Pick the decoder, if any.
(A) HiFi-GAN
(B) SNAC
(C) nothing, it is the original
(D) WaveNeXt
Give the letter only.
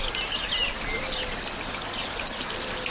C